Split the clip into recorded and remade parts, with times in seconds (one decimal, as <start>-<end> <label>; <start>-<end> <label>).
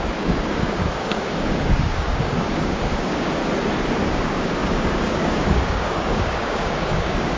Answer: 0.0-3.4 remade; 3.4-4.0 recorded; 4.0-7.4 remade